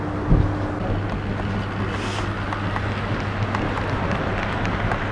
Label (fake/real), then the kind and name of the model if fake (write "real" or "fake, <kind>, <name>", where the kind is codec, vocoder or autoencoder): real